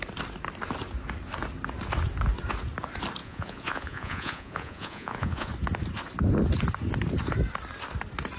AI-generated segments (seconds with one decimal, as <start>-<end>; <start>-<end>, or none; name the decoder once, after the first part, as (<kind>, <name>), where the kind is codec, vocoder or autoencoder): 3.2-5.5 (vocoder, Vocos)